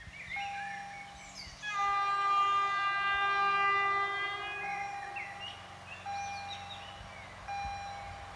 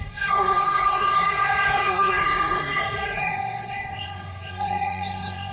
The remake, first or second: second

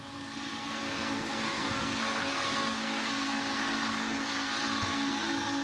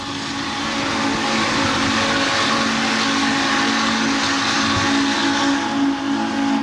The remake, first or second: first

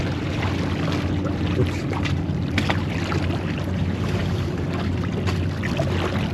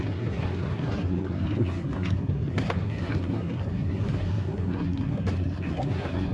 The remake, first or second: second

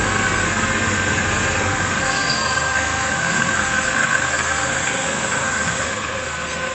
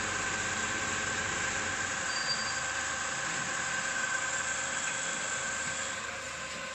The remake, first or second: first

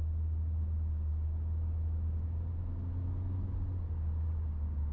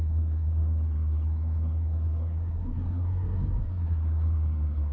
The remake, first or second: second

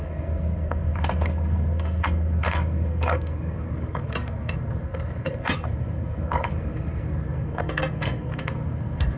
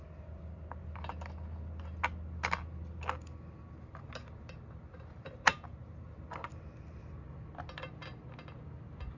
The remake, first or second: first